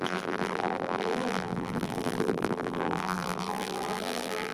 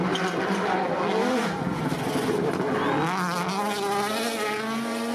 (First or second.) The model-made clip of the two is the first